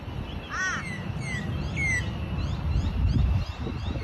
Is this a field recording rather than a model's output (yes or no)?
yes